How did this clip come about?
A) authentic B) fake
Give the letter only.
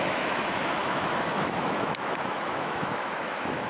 B